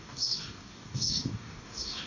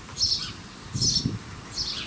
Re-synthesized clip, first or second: first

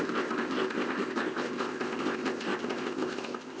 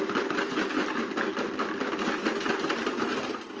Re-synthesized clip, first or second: first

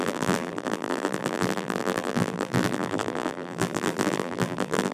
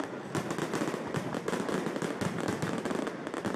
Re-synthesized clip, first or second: first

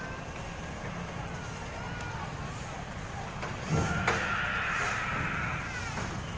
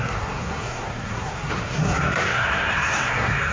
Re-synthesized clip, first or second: second